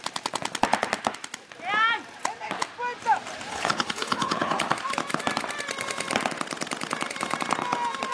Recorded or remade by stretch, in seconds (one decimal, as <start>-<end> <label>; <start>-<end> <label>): 0.0-3.5 recorded; 3.5-4.7 remade; 4.7-8.1 recorded